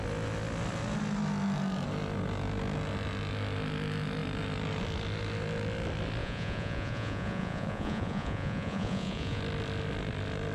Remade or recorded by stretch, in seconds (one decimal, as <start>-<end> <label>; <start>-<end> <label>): 0.0-6.2 recorded; 6.2-9.4 remade; 9.4-10.5 recorded